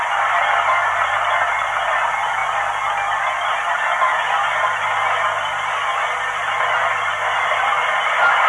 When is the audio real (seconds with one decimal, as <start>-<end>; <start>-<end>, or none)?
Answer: 0.0-8.5